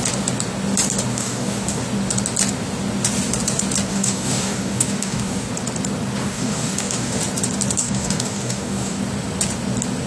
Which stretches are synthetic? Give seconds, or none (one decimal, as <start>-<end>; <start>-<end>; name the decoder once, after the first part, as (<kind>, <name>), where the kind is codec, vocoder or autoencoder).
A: 1.1-1.8 (codec, DAC); 3.9-5.5; 6.2-7.2; 7.8-9.0